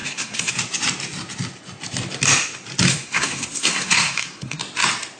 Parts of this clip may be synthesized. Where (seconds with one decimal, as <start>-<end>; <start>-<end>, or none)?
0.0-0.5; 2.9-4.6